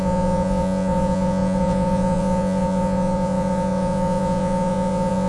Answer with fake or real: fake